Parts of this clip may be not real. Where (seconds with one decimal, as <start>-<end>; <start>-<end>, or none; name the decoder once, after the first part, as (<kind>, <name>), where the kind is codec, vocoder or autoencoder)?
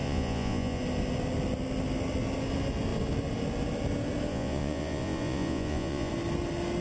0.0-0.8 (vocoder, Vocos); 4.3-6.1